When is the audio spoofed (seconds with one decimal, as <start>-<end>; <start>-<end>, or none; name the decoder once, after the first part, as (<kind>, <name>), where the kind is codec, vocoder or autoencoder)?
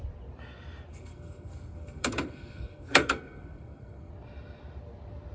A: 0.9-4.1 (codec, SNAC)